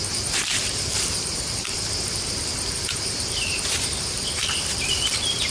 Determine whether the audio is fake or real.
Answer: fake